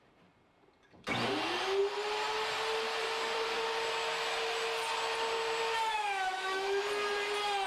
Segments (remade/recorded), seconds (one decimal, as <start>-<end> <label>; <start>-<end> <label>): 0.0-5.9 recorded; 5.9-6.8 remade; 6.8-7.7 recorded